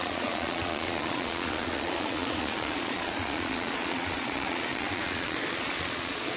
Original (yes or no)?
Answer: no